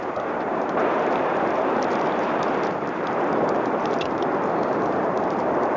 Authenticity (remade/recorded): remade